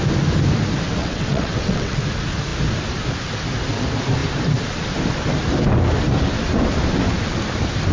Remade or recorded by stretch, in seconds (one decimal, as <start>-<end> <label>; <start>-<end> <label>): 0.0-1.0 recorded; 1.0-2.0 remade; 2.0-7.9 recorded

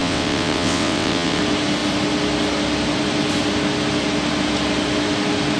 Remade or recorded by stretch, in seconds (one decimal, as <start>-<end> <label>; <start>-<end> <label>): 0.0-1.4 remade; 1.4-5.6 recorded

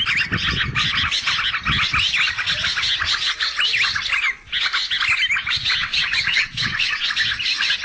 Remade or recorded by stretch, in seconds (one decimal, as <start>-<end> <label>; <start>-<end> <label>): 0.0-5.8 recorded; 5.8-7.1 remade; 7.1-7.8 recorded

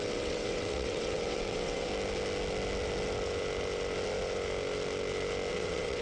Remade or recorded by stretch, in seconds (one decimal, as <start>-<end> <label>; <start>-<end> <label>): 0.0-1.9 remade; 1.9-5.5 recorded; 5.5-6.0 remade

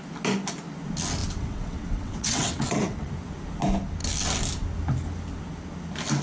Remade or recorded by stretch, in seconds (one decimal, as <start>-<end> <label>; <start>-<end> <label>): 0.0-1.2 recorded; 1.2-3.1 remade; 3.1-6.2 recorded